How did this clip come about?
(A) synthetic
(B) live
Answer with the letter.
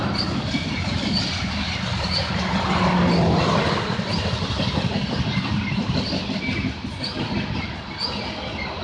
B